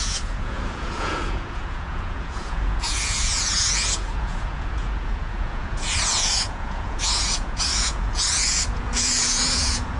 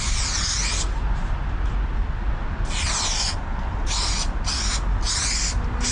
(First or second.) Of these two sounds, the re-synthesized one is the first